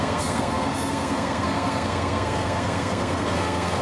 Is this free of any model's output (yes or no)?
no